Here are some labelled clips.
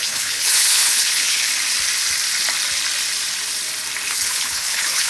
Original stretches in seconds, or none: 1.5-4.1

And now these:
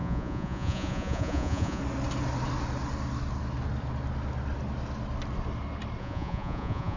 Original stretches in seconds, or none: 1.8-6.0